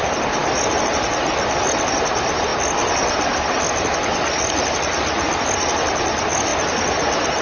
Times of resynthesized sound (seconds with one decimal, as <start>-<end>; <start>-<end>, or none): none

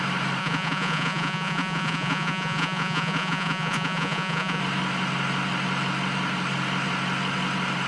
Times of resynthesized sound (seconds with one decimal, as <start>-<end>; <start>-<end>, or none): 0.4-4.6

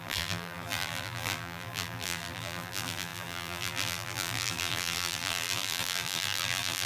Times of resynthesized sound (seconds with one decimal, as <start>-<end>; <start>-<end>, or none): 0.0-6.9

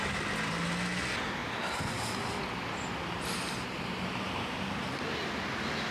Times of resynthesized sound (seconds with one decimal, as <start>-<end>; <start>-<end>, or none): none

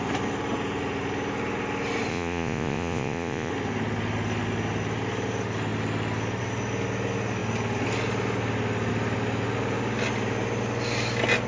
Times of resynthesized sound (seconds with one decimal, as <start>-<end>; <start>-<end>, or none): 2.1-3.5